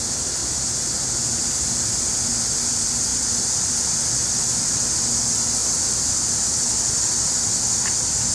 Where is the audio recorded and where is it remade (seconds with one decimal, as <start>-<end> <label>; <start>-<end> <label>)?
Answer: 0.0-8.3 recorded